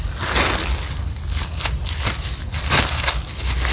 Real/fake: real